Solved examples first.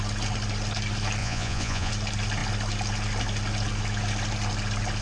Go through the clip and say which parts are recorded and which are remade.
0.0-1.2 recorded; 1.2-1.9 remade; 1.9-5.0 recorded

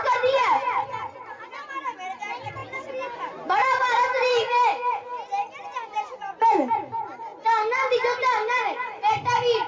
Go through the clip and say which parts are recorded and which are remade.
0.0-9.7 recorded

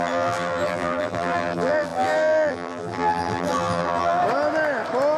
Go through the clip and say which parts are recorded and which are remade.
0.0-4.2 remade; 4.2-5.2 recorded

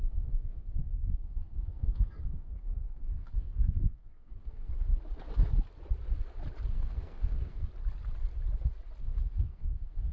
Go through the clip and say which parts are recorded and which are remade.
0.0-4.7 remade; 4.7-6.7 recorded; 6.7-7.7 remade; 7.7-9.0 recorded; 9.0-10.1 remade